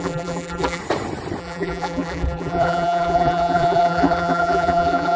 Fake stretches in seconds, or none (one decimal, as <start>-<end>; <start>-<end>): 0.0-0.8; 1.4-5.2